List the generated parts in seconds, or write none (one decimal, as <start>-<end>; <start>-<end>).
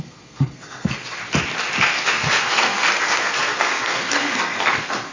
0.0-1.2; 1.8-5.1